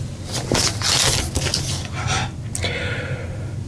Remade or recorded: recorded